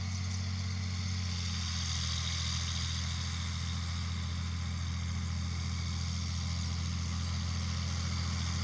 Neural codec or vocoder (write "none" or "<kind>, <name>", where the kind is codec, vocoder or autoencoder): none